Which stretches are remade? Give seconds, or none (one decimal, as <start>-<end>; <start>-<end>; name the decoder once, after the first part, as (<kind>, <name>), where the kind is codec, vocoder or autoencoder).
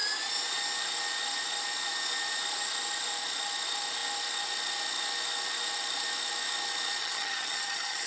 7.0-8.1 (vocoder, HiFi-GAN)